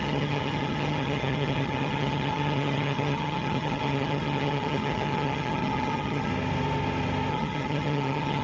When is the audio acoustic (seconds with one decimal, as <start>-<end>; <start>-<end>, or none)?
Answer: 6.3-7.3